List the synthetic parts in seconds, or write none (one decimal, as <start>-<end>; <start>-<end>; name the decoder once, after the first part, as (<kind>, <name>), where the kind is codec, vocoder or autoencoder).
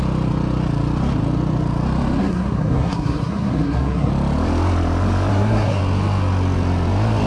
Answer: 2.2-4.1 (codec, SNAC); 5.3-5.8